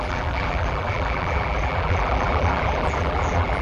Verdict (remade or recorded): remade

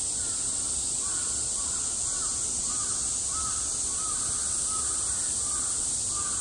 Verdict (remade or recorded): recorded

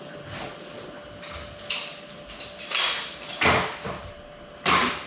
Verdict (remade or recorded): recorded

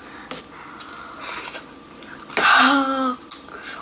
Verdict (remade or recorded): recorded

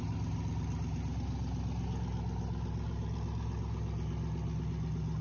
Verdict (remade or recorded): recorded